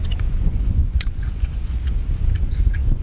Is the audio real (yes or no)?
no